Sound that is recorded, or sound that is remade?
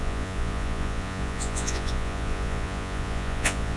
remade